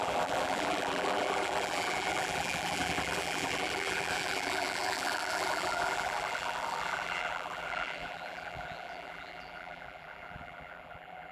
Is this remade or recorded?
remade